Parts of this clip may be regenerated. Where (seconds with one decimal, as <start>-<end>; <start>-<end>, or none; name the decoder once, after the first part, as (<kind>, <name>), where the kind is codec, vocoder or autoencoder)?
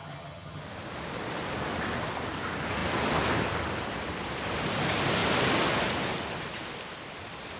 0.0-0.6 (vocoder, HiFi-GAN)